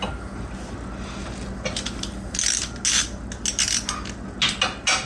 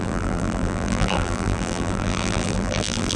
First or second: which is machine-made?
second